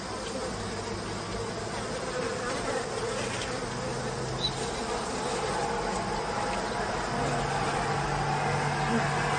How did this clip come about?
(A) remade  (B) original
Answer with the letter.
B